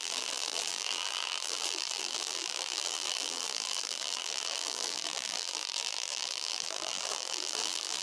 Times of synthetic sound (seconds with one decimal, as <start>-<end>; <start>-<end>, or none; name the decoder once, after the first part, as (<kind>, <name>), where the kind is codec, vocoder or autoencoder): 0.0-8.0 (vocoder, BigVGAN v2)

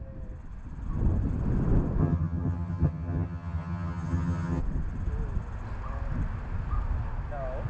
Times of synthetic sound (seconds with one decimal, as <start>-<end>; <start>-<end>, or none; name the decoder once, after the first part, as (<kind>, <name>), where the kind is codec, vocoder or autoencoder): 2.0-4.6 (vocoder, HiFi-GAN)

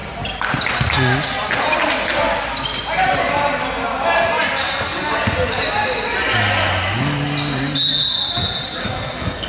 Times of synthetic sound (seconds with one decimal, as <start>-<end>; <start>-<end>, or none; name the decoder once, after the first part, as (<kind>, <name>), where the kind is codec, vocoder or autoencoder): 8.8-9.5 (codec, SNAC)

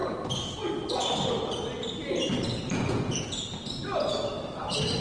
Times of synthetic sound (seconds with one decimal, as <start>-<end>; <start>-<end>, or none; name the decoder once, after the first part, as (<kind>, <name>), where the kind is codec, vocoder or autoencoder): 2.6-3.3 (vocoder, Vocos)

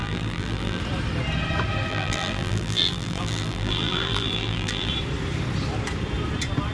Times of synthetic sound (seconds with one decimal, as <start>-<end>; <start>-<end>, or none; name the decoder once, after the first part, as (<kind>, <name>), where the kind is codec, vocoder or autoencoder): 0.0-0.8 (vocoder, BigVGAN v2); 1.9-4.9

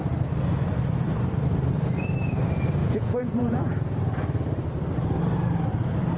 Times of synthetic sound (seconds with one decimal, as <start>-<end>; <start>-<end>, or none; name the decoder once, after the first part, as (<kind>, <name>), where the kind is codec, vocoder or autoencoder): 2.8-3.6 (vocoder, Vocos)

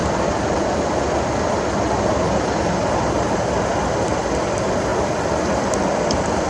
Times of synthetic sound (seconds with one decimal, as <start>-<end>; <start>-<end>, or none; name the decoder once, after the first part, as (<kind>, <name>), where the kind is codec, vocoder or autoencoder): none

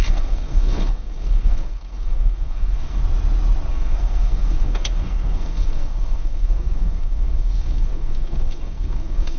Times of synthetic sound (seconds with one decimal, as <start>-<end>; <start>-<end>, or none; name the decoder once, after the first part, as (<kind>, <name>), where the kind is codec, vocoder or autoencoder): 0.0-3.0 (codec, SNAC); 3.7-9.4